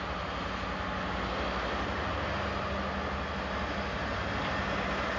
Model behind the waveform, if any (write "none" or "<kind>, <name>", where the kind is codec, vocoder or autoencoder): none